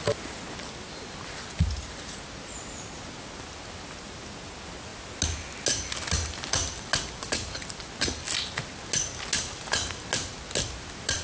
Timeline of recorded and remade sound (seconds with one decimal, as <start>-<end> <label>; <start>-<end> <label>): 0.0-11.2 recorded